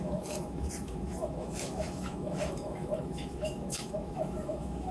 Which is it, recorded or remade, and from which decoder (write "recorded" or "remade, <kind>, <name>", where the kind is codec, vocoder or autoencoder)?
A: remade, autoencoder, DAC-VAE